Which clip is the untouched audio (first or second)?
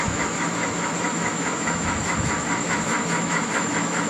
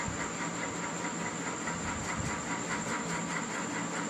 second